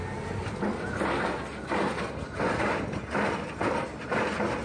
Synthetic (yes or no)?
no